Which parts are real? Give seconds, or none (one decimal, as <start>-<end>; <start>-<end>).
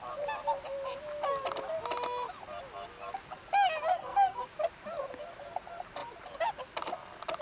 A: 0.0-3.9; 4.4-7.4